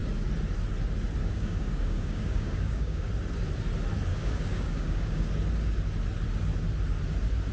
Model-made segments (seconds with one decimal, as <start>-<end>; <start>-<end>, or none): 1.2-3.1; 4.1-5.3